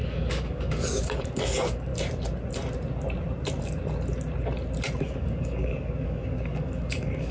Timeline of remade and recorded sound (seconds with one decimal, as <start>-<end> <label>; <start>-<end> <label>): 0.0-1.9 remade; 1.9-5.0 recorded; 5.0-7.3 remade